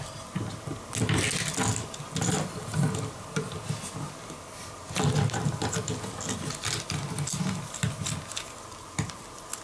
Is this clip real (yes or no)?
yes